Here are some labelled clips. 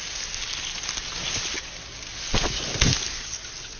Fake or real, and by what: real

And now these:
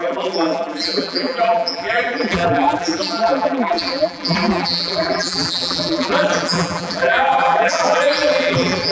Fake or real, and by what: fake, vocoder, BigVGAN v2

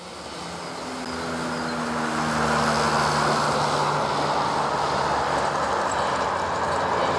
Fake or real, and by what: real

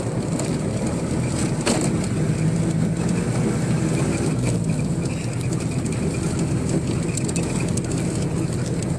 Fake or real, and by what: real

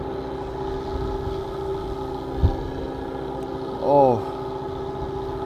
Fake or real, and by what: real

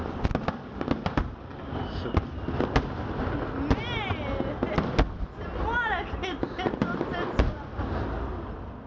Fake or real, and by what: real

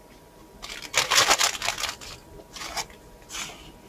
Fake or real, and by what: real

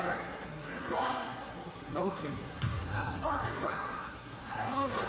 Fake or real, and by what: fake, codec, SNAC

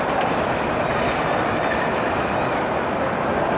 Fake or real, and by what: real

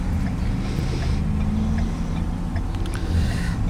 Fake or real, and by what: real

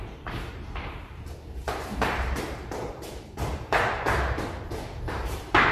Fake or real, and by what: fake, vocoder, BigVGAN v2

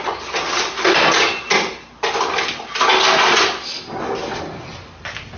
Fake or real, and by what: real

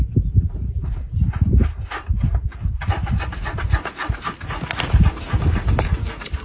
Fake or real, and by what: real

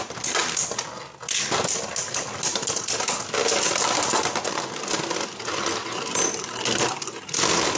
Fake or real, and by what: real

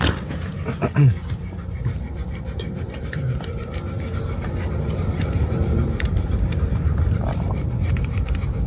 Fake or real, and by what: fake, vocoder, BigVGAN v2